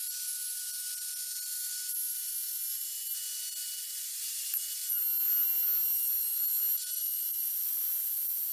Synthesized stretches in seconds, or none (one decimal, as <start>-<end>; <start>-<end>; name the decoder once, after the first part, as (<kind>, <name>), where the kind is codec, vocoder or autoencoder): none